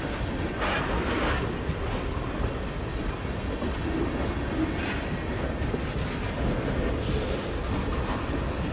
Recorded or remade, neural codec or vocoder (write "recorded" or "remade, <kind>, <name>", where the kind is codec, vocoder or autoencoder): recorded